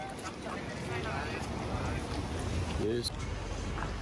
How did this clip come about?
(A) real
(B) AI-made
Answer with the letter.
A